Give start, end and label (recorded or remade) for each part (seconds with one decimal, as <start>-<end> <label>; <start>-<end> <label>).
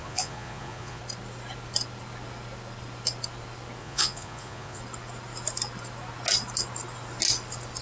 0.0-1.0 remade; 1.0-3.8 recorded; 3.8-4.8 remade; 4.8-7.8 recorded